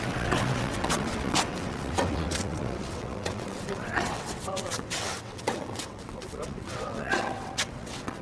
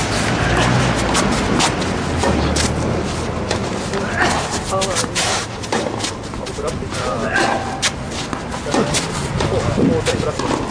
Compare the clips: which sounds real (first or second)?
second